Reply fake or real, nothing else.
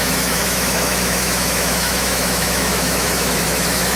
fake